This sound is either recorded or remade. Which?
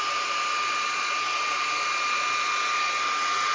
recorded